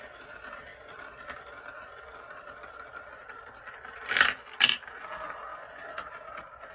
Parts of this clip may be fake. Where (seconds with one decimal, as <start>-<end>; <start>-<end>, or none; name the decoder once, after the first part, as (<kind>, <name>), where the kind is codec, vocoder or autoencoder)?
0.7-1.7 (vocoder, BigVGAN v2); 5.5-6.3